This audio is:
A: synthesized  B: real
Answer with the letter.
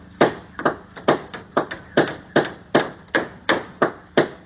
B